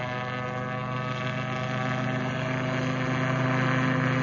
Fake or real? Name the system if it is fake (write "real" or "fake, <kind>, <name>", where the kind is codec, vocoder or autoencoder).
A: real